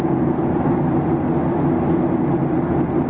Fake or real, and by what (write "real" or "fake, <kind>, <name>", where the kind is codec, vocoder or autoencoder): real